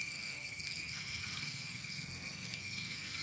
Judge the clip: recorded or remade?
remade